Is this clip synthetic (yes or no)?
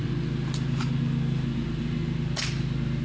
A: no